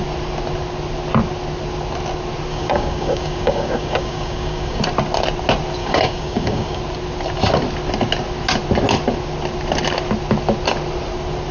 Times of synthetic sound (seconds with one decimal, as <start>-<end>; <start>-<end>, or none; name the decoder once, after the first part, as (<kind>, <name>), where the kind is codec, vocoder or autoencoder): 2.5-4.8 (codec, DAC); 5.8-6.8